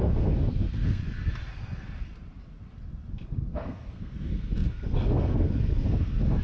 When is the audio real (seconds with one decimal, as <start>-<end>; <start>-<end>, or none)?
1.0-3.1

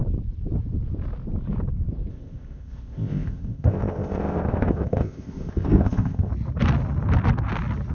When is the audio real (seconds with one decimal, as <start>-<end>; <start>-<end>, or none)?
0.0-2.1; 6.3-7.9

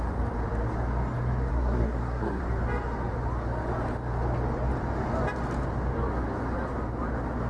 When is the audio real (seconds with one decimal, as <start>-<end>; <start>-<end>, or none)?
0.0-1.5; 2.4-7.5

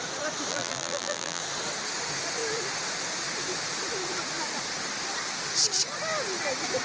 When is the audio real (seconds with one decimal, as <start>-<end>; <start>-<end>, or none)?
0.0-0.5; 1.4-6.8

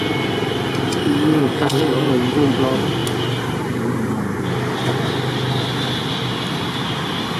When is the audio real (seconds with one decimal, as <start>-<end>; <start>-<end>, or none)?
0.0-1.0; 2.1-7.4

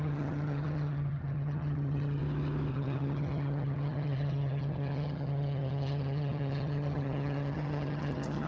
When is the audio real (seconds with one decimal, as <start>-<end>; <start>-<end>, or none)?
2.2-2.7

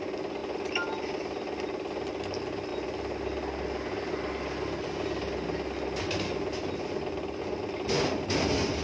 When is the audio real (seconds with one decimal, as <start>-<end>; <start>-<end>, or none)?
0.0-8.8

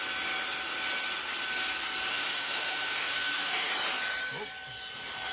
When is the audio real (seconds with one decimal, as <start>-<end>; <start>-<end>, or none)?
0.0-2.1; 3.7-5.3